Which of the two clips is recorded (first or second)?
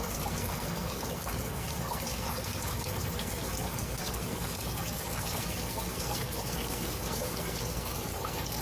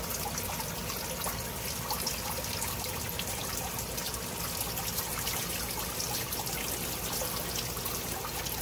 second